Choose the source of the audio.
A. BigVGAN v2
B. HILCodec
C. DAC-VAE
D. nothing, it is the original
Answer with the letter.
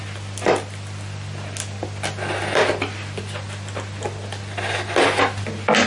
D